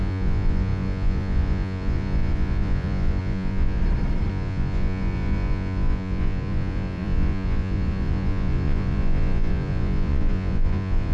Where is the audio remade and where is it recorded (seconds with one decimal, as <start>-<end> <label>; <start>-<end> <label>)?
0.0-3.8 remade; 3.8-4.3 recorded; 4.3-11.1 remade

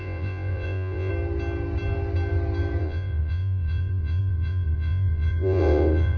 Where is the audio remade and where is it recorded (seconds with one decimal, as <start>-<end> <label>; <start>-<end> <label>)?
0.0-1.1 remade; 1.1-2.8 recorded; 2.8-6.2 remade

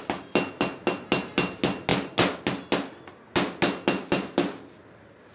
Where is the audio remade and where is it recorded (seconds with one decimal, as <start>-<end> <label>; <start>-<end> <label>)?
0.0-5.3 recorded

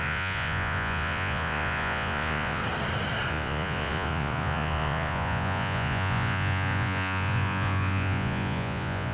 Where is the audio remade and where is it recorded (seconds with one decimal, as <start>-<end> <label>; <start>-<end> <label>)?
0.0-2.6 remade; 2.6-3.3 recorded; 3.3-9.1 remade

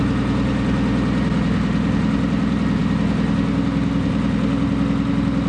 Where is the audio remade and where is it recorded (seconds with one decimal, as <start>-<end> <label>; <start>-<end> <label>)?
0.0-5.5 recorded

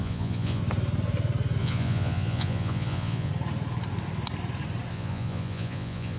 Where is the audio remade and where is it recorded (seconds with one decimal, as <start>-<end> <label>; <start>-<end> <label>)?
0.0-0.6 remade; 0.6-1.6 recorded; 1.6-3.3 remade; 3.3-4.9 recorded; 4.9-6.2 remade